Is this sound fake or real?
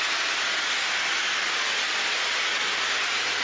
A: real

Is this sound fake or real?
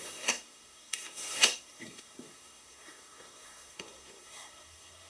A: fake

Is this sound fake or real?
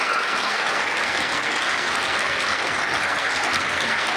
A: fake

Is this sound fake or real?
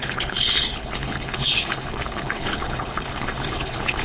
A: fake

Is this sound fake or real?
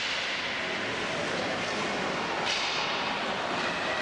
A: real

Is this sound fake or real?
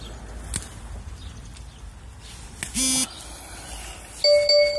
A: real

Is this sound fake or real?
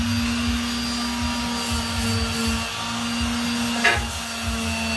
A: real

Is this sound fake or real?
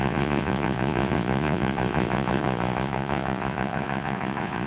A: fake